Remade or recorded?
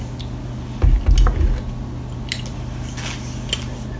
recorded